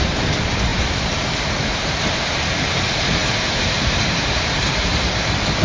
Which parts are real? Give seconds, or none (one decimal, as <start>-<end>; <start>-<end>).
0.0-0.7; 1.7-3.2